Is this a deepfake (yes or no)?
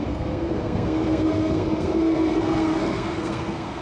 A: yes